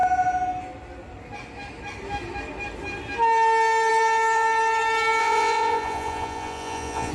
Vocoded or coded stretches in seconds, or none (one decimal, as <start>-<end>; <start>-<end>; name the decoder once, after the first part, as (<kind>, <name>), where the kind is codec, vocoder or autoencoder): 5.2-7.1 (vocoder, Vocos)